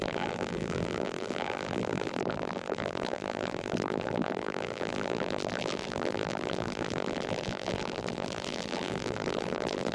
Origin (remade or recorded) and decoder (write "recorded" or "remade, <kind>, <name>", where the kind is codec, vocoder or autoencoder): remade, vocoder, BigVGAN v2